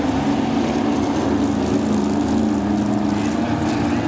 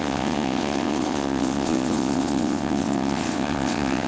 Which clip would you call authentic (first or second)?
first